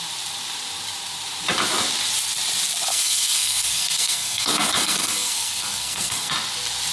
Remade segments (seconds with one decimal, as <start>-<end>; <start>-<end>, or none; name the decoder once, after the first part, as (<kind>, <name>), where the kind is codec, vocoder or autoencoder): 2.9-6.3 (codec, SNAC)